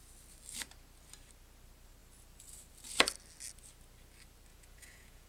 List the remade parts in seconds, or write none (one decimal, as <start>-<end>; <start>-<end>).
4.5-5.3